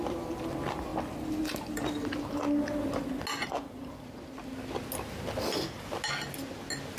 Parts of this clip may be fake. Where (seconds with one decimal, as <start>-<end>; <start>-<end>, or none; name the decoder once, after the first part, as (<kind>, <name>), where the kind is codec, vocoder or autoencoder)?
3.4-4.1 (vocoder, BigVGAN v2)